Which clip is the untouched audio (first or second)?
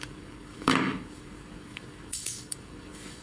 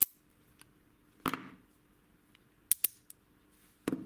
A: second